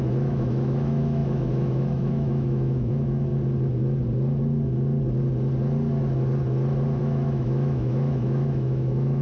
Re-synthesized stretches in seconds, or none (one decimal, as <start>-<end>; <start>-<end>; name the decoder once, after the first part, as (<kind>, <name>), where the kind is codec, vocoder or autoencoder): 0.0-3.3 (autoencoder, DAC-VAE); 7.0-9.2